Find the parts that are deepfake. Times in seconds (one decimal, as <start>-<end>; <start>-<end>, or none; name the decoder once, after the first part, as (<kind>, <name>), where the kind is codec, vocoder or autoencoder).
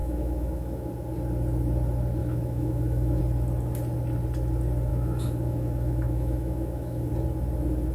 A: 0.0-0.9 (autoencoder, DAC-VAE); 2.2-3.2; 4.9-7.1